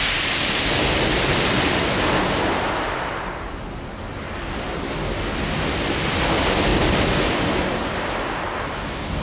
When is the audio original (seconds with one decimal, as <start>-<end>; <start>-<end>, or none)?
0.0-6.7; 7.4-9.2